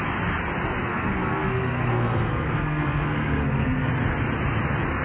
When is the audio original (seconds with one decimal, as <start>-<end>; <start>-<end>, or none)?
0.0-0.9; 3.9-5.0